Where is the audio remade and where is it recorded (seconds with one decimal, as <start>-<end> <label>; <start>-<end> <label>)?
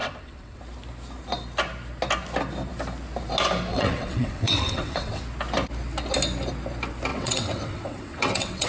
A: 0.0-0.6 remade; 0.6-3.7 recorded; 3.7-5.2 remade; 5.2-7.1 recorded; 7.1-8.7 remade